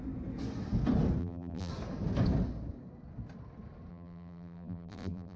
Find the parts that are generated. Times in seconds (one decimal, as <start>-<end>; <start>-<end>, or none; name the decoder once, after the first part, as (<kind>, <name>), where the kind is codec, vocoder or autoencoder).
1.2-1.7 (vocoder, BigVGAN v2); 3.9-5.4